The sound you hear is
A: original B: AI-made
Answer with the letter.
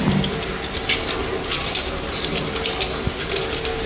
A